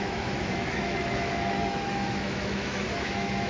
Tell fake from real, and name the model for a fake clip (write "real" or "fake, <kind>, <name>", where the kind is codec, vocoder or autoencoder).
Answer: fake, autoencoder, DAC-VAE